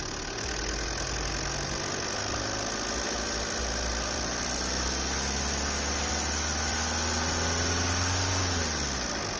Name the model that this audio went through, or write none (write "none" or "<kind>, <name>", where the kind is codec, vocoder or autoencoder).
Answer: none